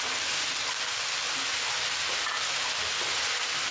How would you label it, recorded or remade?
recorded